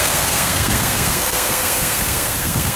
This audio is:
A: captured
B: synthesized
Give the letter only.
B